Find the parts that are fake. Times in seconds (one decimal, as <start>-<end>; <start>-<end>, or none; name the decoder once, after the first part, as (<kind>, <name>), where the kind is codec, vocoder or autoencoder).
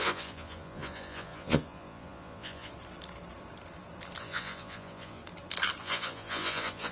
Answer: 0.0-2.7 (vocoder, Vocos); 4.2-5.2; 5.8-6.9